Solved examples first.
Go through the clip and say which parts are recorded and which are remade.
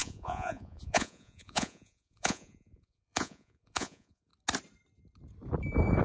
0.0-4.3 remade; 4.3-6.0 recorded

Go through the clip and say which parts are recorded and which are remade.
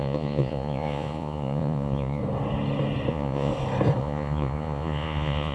0.0-2.2 remade; 2.2-3.1 recorded; 3.1-3.5 remade; 3.5-4.0 recorded; 4.0-5.5 remade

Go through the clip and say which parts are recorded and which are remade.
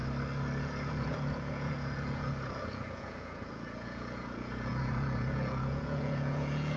0.0-0.6 recorded; 0.6-6.8 remade